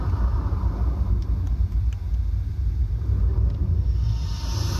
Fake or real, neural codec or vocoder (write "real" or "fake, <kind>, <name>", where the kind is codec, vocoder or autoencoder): real